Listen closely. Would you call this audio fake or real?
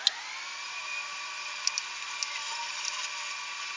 real